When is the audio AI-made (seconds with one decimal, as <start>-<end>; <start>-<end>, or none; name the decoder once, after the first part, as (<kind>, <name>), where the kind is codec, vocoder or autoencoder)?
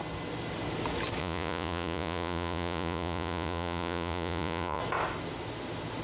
1.2-4.8 (vocoder, Vocos)